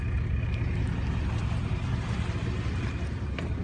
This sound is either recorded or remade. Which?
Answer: recorded